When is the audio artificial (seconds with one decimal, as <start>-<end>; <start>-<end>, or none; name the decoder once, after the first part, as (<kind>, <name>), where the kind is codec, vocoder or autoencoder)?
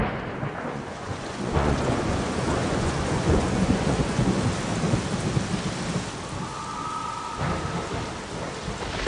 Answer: 0.7-4.4 (vocoder, Vocos)